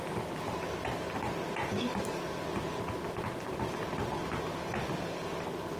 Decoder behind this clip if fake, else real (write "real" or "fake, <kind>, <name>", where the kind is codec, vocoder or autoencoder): real